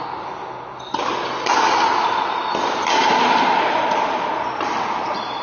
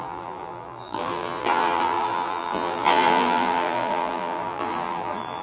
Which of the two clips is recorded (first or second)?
first